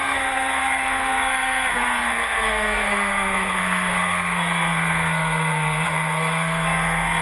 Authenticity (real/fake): fake